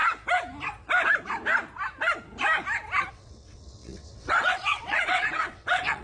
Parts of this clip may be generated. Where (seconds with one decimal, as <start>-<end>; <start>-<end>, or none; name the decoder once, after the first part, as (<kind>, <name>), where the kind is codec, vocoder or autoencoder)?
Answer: 3.1-6.0 (vocoder, WaveNeXt)